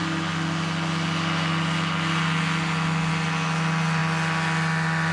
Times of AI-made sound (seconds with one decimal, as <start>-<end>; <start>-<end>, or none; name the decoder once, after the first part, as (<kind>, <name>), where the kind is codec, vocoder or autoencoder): none